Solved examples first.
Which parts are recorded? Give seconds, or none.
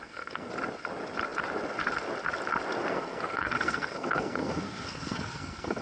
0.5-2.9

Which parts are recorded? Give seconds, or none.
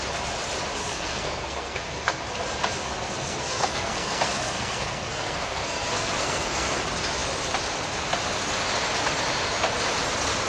0.0-0.8; 2.2-2.8; 6.8-10.5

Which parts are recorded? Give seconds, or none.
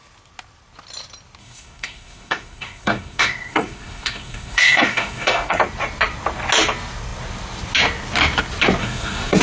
0.0-1.4; 5.6-8.8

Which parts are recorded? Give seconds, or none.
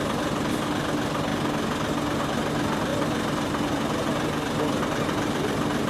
0.0-5.9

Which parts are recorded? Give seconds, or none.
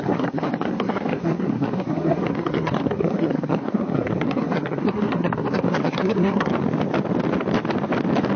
6.5-8.4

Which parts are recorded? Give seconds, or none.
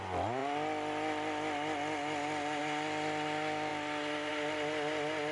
0.0-5.3